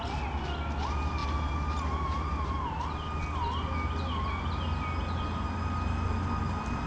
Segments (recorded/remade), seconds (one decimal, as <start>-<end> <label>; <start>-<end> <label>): 0.0-6.9 recorded